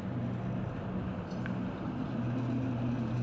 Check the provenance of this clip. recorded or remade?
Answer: recorded